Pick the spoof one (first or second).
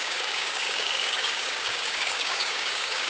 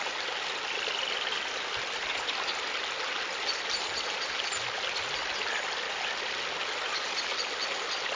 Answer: first